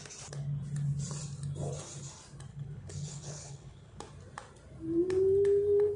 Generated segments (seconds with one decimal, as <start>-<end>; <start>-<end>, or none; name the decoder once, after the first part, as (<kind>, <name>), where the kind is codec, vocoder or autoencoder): 2.5-4.0 (codec, HILCodec)